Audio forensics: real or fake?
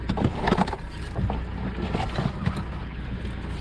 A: real